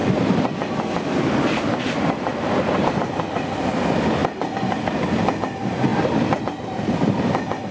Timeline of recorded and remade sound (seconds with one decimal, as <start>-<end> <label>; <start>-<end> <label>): 0.0-7.7 recorded